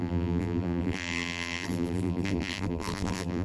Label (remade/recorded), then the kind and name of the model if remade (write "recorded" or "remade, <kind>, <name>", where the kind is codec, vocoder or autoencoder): remade, vocoder, BigVGAN v2